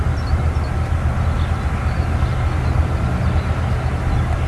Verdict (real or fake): real